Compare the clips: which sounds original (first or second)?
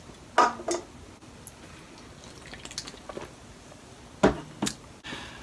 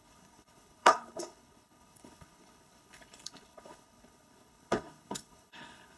first